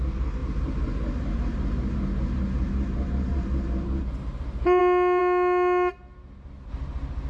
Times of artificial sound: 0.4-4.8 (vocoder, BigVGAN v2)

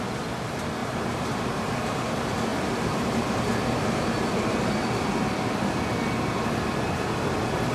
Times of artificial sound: 0.8-2.1 (vocoder, BigVGAN v2); 2.5-4.3

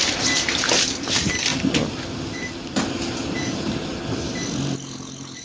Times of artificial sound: 1.5-3.7 (vocoder, BigVGAN v2)

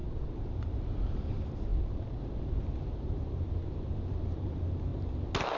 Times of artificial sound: 0.0-4.9 (vocoder, BigVGAN v2)

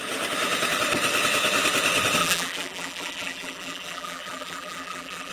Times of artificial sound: 2.2-5.3 (vocoder, BigVGAN v2)

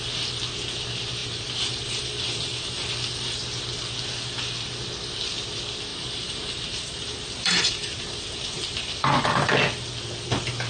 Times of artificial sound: 1.2-2.9 (vocoder, BigVGAN v2); 5.9-9.5

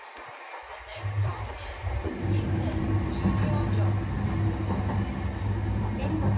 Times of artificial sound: 0.9-2.6 (vocoder, BigVGAN v2)

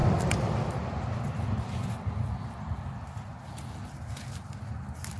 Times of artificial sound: 0.0-1.9 (vocoder, BigVGAN v2)